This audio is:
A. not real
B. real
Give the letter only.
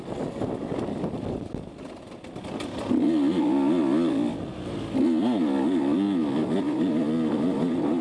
B